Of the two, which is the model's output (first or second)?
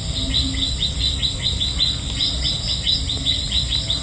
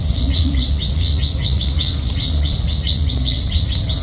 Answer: second